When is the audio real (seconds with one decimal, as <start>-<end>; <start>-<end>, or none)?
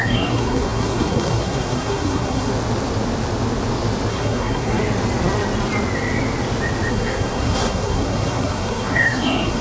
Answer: 2.5-4.1; 4.8-6.9